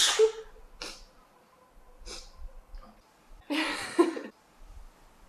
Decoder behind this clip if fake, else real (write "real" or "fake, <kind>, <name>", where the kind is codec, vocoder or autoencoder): real